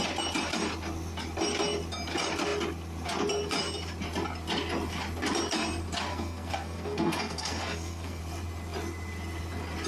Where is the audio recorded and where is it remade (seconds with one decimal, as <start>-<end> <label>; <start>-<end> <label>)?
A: 0.0-6.1 recorded; 6.1-8.2 remade; 8.2-9.9 recorded